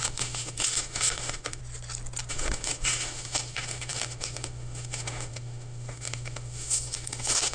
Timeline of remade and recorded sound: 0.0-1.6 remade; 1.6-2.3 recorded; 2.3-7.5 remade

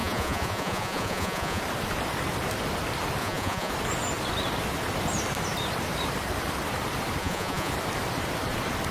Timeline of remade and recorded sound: 0.0-1.6 remade; 1.6-3.2 recorded; 3.2-3.7 remade; 3.7-7.2 recorded; 7.2-7.7 remade; 7.7-8.9 recorded